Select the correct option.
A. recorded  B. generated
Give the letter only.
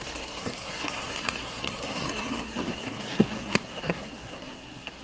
B